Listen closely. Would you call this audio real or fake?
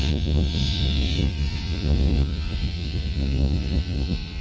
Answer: fake